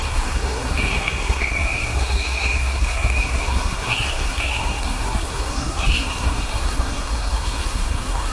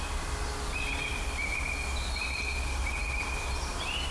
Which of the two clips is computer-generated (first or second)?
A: first